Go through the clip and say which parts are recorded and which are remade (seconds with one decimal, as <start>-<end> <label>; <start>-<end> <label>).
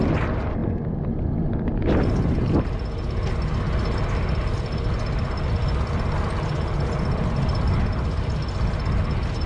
0.0-9.5 recorded